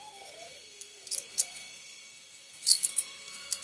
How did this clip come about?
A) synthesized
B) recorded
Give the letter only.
A